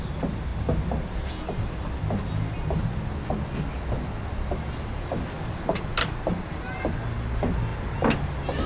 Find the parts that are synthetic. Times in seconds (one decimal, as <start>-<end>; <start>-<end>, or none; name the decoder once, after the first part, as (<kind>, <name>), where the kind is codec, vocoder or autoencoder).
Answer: none